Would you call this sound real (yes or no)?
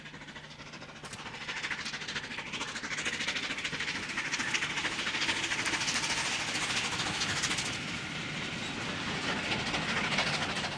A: yes